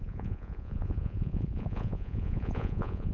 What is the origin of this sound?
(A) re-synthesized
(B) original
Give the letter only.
A